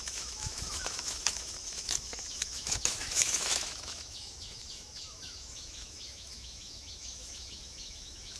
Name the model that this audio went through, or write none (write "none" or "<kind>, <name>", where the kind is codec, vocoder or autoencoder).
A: autoencoder, DAC-VAE